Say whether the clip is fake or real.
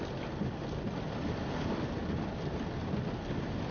real